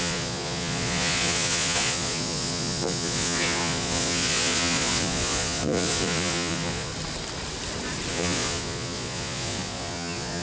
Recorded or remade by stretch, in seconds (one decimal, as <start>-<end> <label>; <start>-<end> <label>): 0.0-6.9 remade; 6.9-8.1 recorded; 8.1-10.4 remade